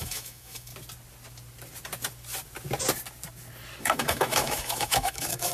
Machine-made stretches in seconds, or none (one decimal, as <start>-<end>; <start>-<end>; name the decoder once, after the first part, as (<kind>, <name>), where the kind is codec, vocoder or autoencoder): 0.0-0.7 (autoencoder, DAC-VAE); 3.8-5.5